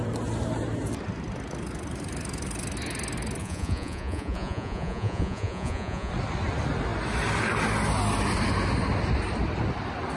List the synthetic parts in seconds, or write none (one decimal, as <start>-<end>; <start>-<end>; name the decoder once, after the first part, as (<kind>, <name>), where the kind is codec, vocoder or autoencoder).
3.4-6.1 (vocoder, Vocos)